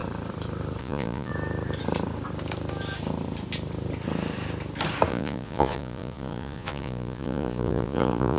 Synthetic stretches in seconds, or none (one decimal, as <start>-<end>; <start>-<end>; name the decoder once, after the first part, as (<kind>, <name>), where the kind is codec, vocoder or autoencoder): 0.8-1.3 (vocoder, Vocos); 5.1-8.4